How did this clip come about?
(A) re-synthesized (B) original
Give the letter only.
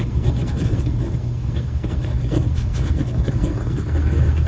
A